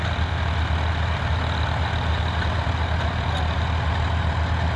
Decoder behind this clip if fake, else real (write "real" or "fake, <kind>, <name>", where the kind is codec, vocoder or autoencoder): real